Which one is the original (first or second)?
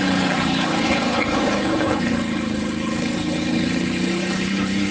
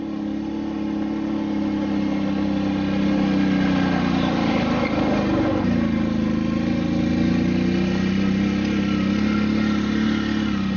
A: second